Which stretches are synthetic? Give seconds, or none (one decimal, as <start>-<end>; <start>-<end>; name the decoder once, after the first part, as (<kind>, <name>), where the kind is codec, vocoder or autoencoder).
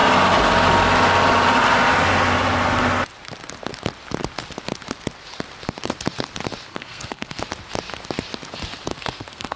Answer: 6.7-7.4 (codec, SNAC); 8.9-9.6